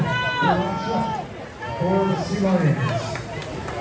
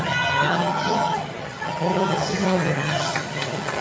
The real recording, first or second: first